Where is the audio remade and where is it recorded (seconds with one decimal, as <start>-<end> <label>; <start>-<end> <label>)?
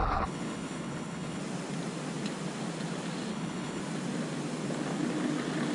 0.0-1.4 remade; 1.4-3.3 recorded; 3.3-3.8 remade; 3.8-5.7 recorded